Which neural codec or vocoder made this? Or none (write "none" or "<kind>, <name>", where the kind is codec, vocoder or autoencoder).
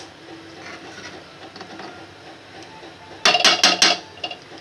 none